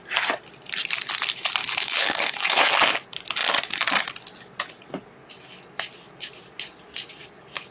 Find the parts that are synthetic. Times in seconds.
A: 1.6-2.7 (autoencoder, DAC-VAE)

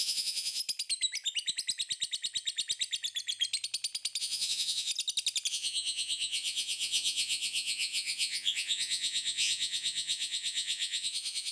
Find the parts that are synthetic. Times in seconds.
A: 0.0-0.6 (vocoder, Vocos); 4.2-4.9; 5.5-11.5

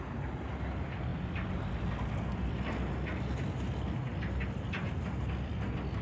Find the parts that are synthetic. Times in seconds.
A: none

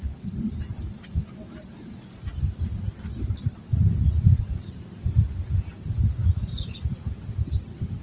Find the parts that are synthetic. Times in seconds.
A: 3.7-4.4 (vocoder, Vocos); 6.2-6.8

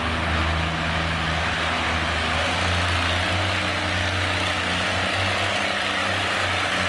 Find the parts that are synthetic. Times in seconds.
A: none